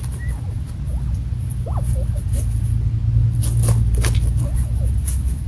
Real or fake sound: real